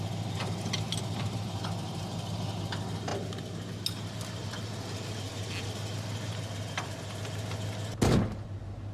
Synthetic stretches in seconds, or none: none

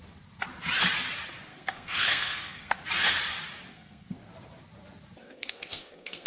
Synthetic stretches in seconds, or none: 1.5-2.8 (codec, SNAC); 3.7-4.3; 5.2-6.3

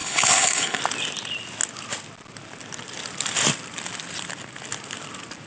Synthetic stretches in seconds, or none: 0.0-0.8 (codec, HILCodec)

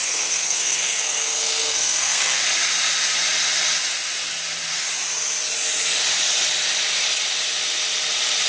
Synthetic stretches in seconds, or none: 0.0-2.4 (codec, SNAC)

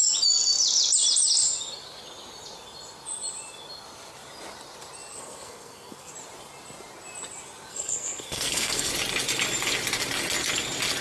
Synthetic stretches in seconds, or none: 5.1-6.1 (codec, SNAC); 7.7-8.9